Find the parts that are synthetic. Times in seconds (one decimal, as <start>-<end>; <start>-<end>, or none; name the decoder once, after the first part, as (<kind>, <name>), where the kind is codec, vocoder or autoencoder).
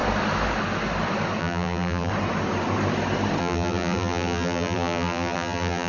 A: 1.4-2.1 (vocoder, BigVGAN v2); 3.4-5.9